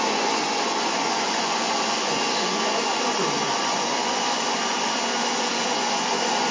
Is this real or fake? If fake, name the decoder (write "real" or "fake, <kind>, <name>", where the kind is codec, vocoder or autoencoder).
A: fake, vocoder, Vocos